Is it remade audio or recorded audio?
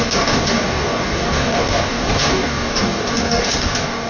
remade